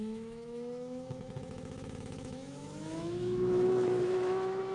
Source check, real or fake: fake